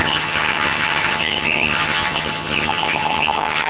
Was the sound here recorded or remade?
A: remade